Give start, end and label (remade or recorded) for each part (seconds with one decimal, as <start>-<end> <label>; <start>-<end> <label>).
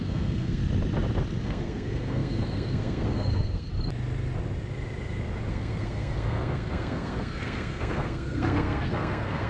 0.0-0.6 remade; 0.6-1.4 recorded; 1.4-3.7 remade; 3.7-5.5 recorded; 5.5-9.5 remade